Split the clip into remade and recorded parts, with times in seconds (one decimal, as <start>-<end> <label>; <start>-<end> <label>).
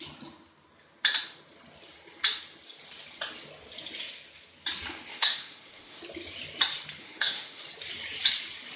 0.0-5.1 recorded; 5.1-6.0 remade; 6.0-7.0 recorded; 7.0-7.6 remade; 7.6-8.8 recorded